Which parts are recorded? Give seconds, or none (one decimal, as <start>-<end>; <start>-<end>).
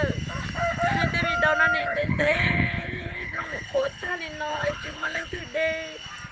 0.0-1.8; 4.1-4.5; 5.4-6.3